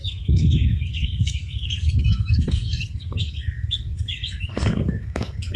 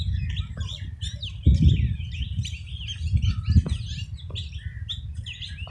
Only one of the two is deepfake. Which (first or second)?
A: first